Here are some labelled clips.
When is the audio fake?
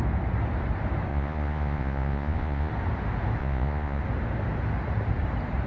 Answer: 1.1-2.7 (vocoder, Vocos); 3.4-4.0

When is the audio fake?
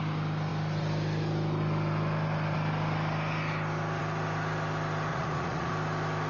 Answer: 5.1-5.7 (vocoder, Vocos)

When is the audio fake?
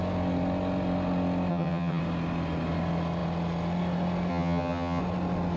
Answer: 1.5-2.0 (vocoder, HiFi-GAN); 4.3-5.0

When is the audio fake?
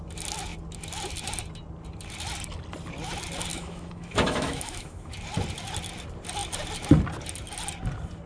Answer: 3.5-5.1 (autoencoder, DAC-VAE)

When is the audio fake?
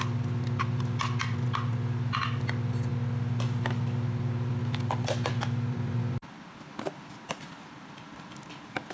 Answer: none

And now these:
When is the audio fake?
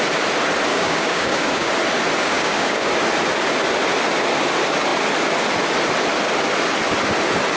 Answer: 0.7-1.7 (codec, DAC); 2.2-2.9